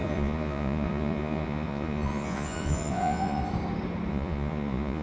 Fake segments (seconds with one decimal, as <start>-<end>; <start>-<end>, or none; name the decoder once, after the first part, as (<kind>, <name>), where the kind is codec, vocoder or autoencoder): 0.0-3.4 (vocoder, Vocos); 4.1-5.0